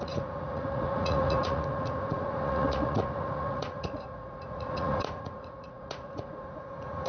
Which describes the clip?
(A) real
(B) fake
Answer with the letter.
B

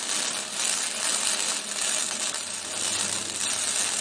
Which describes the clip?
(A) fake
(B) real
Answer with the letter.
B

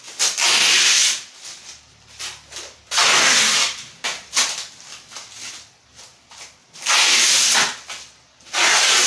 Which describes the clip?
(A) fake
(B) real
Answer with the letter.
B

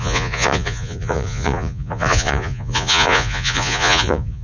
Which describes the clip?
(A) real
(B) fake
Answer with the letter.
B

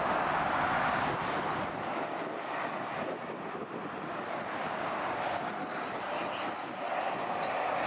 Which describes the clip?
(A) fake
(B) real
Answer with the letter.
B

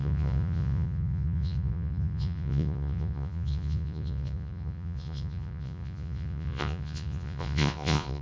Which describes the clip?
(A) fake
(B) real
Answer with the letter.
A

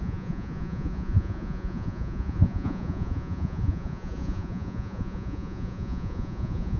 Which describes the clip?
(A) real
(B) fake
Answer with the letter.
B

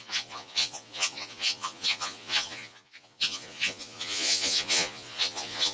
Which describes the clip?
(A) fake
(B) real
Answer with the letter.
A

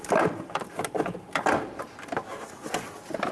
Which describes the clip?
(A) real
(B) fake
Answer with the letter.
A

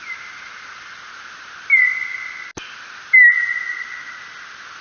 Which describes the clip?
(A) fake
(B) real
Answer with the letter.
B